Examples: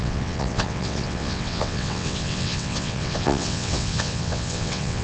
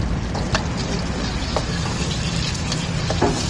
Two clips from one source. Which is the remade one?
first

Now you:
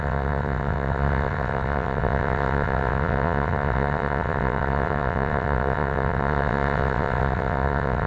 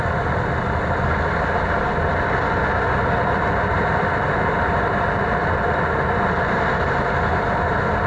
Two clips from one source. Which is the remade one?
first